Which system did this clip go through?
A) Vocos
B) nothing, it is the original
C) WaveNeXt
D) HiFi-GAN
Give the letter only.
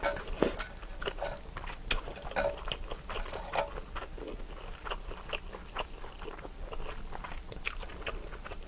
B